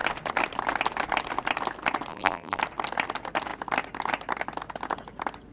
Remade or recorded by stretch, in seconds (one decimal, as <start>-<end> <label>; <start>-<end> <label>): 0.0-2.1 recorded; 2.1-2.6 remade; 2.6-5.5 recorded